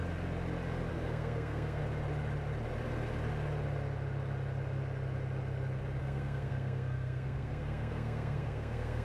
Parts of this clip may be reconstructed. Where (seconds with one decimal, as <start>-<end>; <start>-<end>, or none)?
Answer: 0.9-1.8; 6.0-9.0